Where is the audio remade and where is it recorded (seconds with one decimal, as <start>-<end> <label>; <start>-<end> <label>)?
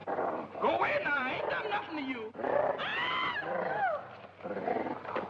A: 0.0-1.3 remade; 1.3-2.9 recorded; 2.9-3.7 remade; 3.7-5.3 recorded